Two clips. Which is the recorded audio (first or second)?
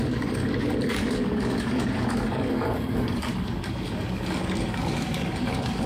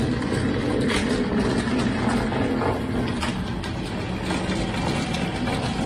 second